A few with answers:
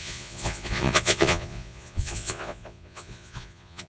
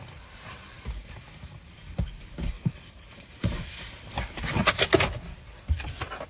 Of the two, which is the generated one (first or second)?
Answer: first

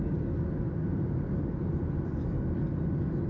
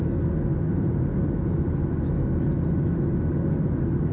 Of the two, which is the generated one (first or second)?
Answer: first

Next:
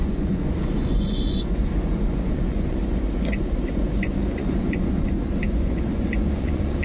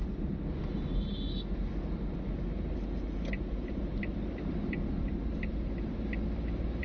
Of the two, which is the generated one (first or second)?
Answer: first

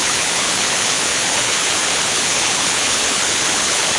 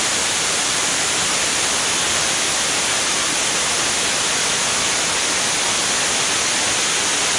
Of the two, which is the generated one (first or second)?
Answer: first